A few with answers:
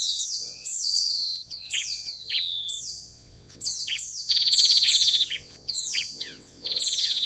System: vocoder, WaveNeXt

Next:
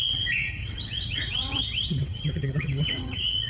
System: vocoder, WaveNeXt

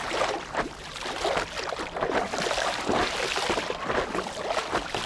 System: none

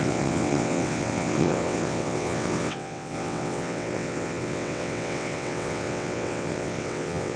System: vocoder, WaveNeXt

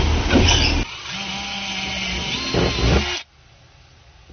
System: none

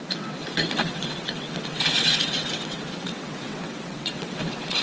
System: vocoder, WaveNeXt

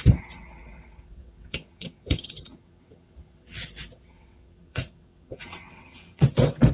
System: vocoder, WaveNeXt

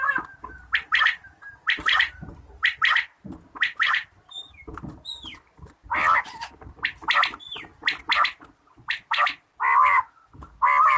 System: none